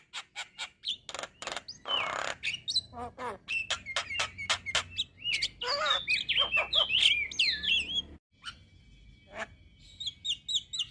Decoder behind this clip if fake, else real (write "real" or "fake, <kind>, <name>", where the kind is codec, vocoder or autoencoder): real